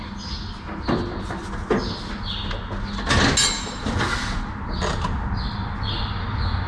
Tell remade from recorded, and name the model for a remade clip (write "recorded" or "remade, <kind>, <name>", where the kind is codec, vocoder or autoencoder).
recorded